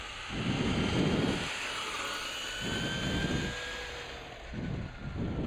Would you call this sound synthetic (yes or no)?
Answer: no